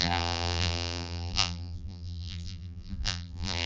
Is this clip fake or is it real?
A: fake